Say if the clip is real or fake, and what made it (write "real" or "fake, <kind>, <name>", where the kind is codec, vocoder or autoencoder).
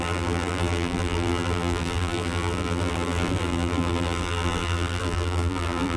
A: fake, vocoder, BigVGAN v2